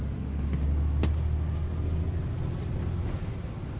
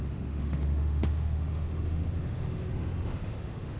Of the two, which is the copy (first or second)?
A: second